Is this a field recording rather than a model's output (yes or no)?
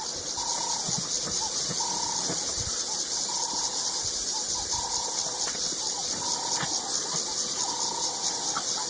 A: yes